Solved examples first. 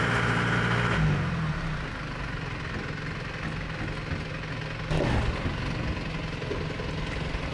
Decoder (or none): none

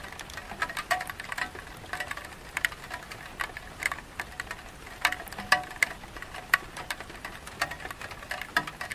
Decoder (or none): none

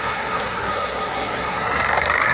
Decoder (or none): codec, SNAC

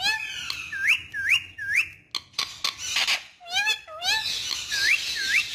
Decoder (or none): none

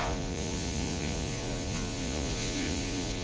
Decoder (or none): vocoder, Vocos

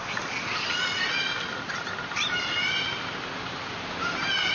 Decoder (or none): none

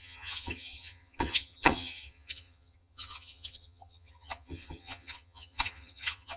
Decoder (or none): vocoder, HiFi-GAN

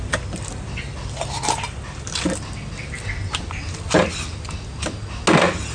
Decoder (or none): none